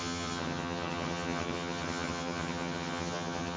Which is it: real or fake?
fake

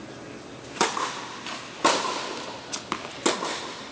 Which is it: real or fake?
real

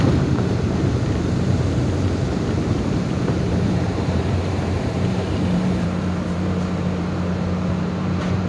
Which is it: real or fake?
fake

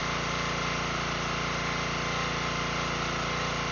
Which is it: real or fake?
real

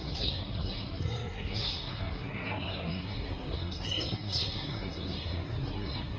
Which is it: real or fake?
fake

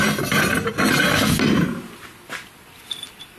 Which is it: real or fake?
real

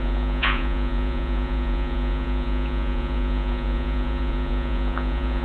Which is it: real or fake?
fake